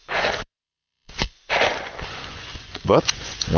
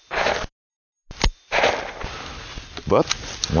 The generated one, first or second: first